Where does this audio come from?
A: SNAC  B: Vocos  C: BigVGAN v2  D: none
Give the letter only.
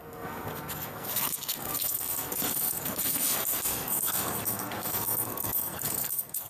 A